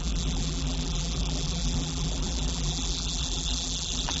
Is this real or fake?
fake